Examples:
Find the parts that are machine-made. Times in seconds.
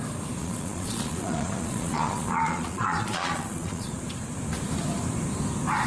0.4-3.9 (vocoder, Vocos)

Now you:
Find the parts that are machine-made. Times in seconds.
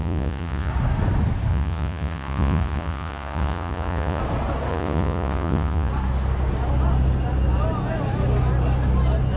0.0-0.7 (vocoder, Vocos); 1.5-4.2; 4.7-5.9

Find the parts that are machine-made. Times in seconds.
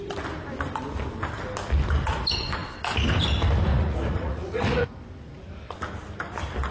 3.7-5.0 (vocoder, Vocos)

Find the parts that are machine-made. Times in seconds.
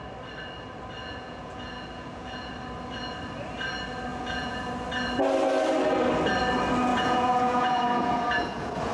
1.0-2.5 (vocoder, Vocos); 4.1-4.7; 6.9-8.9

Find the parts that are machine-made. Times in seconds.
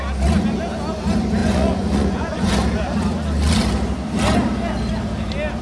1.4-2.5 (vocoder, Vocos)